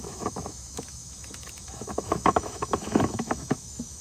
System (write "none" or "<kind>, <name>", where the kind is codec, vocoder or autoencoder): autoencoder, DAC-VAE